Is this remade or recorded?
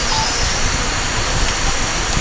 recorded